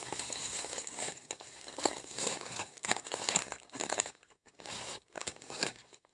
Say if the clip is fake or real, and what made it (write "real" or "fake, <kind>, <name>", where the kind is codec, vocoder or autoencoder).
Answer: fake, codec, SNAC